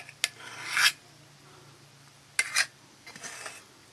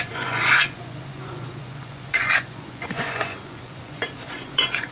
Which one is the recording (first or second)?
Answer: first